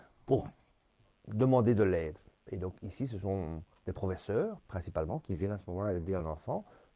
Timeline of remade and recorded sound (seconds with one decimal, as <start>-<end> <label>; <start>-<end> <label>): 0.0-0.9 remade; 0.9-5.1 recorded; 5.1-6.2 remade; 6.2-7.0 recorded